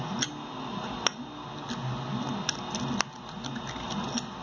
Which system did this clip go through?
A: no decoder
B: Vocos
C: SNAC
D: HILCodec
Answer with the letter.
A